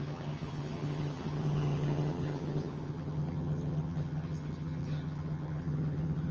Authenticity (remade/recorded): remade